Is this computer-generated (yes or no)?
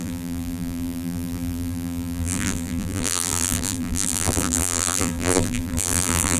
yes